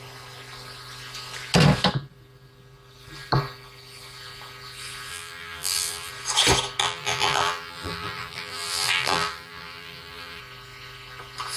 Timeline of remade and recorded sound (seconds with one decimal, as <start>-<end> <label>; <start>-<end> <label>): 0.0-5.1 recorded; 5.1-6.1 remade; 6.1-6.8 recorded; 6.8-10.4 remade; 10.4-11.6 recorded